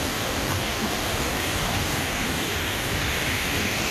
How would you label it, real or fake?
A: fake